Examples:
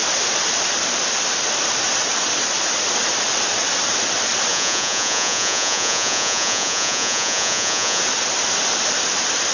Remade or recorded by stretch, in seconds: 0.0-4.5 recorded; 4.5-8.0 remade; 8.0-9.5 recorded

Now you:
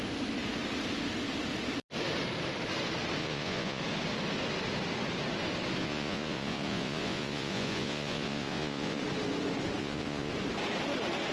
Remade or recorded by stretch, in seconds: 0.0-3.2 recorded; 3.2-3.8 remade; 3.8-5.8 recorded; 5.8-9.0 remade; 9.0-9.8 recorded; 9.8-10.3 remade; 10.3-11.3 recorded

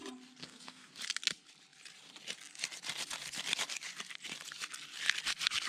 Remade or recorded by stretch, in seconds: 0.0-0.4 recorded; 0.4-1.0 remade; 1.0-5.7 recorded

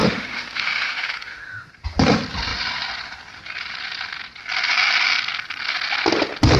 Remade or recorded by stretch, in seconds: 0.0-1.7 remade; 1.7-6.6 recorded